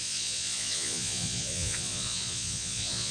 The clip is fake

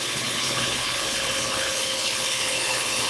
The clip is fake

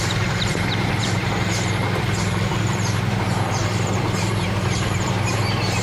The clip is fake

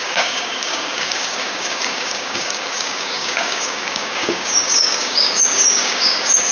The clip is fake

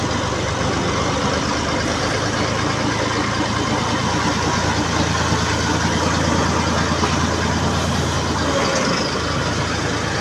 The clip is real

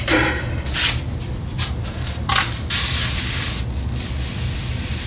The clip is fake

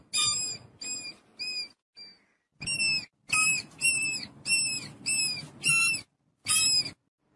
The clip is real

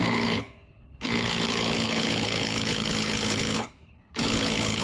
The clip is fake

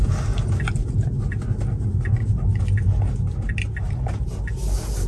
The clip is real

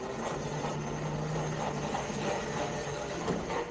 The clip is real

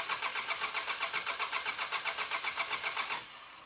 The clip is real